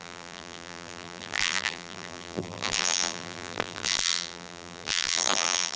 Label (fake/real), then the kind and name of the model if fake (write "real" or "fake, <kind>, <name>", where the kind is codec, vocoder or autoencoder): fake, vocoder, BigVGAN v2